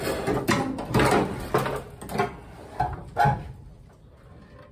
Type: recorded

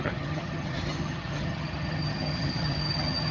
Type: remade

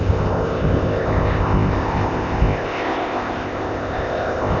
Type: remade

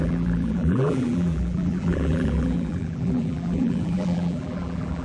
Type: remade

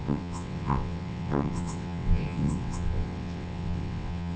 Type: remade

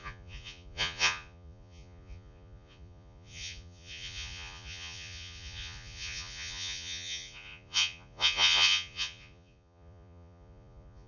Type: remade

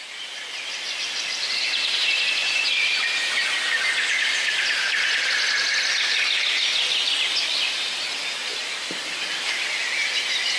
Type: recorded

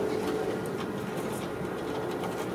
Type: recorded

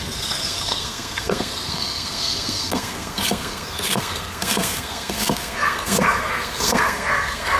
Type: remade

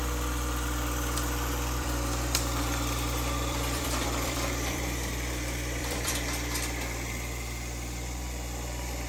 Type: remade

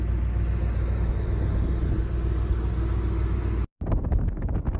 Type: recorded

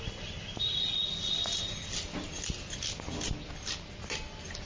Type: recorded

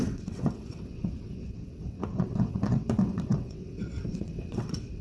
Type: remade